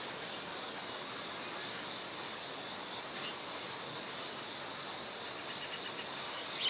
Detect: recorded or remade recorded